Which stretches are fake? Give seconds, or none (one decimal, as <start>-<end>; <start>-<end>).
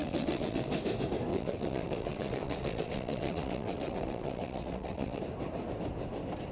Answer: 0.0-0.7; 1.3-5.2